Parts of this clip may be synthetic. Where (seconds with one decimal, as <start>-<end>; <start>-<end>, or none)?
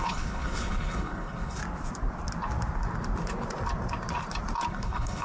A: 0.0-1.6; 4.7-5.2